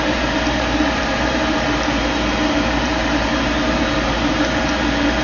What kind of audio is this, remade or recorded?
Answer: remade